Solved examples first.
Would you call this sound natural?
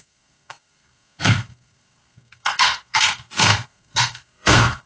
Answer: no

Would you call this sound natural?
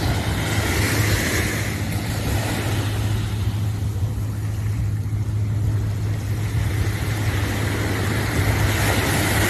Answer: yes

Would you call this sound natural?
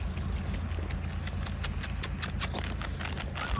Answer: yes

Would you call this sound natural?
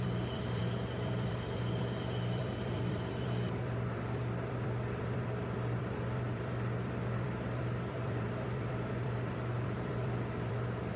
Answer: no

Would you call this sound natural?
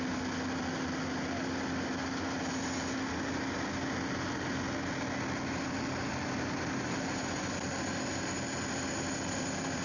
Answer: yes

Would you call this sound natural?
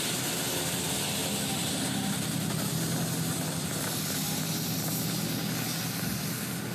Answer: yes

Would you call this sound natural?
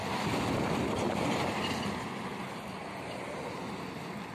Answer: yes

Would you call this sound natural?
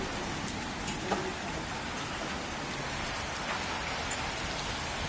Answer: yes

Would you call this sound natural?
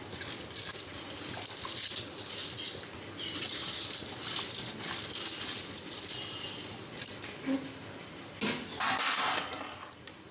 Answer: yes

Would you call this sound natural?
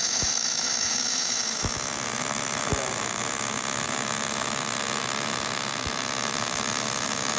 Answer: no